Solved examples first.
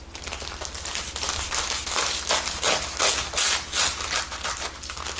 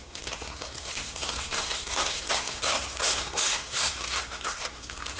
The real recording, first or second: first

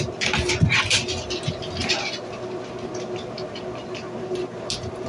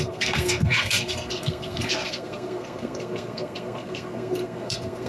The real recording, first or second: first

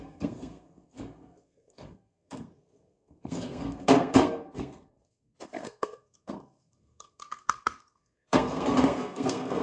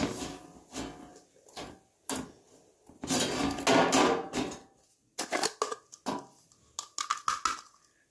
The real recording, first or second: second